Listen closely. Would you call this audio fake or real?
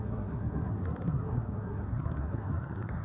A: fake